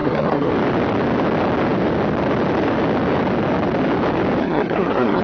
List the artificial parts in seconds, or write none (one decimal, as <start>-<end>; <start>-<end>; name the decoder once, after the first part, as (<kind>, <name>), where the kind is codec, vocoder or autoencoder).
0.0-0.5 (codec, SNAC); 4.4-5.2